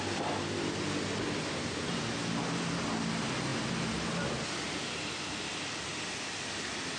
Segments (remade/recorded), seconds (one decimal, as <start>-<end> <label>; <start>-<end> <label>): 0.0-7.0 recorded